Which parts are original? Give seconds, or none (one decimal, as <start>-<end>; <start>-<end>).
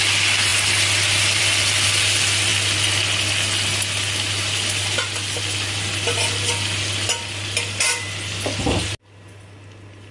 0.0-10.1